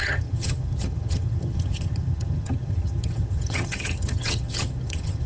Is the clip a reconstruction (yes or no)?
yes